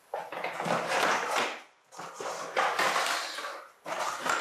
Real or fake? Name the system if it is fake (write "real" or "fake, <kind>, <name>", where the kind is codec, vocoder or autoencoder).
real